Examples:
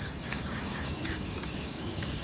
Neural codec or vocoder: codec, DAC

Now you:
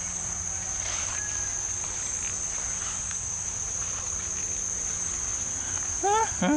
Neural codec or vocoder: none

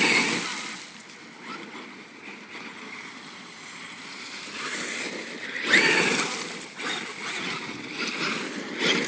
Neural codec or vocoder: none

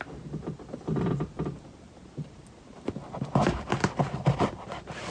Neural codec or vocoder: vocoder, BigVGAN v2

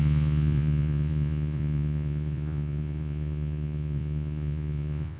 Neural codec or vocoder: vocoder, Vocos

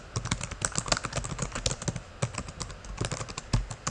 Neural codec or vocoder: none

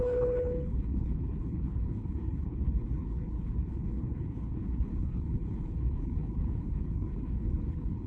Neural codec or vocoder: codec, HILCodec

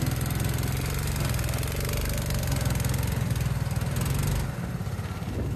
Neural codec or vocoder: none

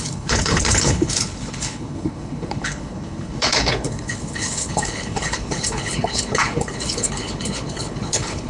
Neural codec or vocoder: codec, HILCodec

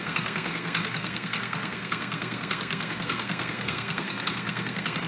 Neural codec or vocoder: codec, SNAC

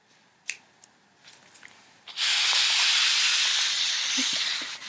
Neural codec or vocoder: none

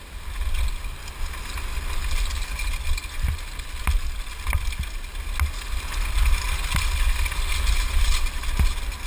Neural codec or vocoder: none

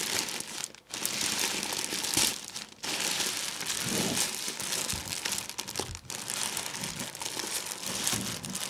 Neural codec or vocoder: none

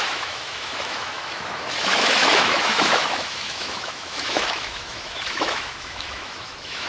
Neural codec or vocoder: autoencoder, DAC-VAE